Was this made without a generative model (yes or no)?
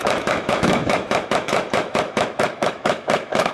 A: no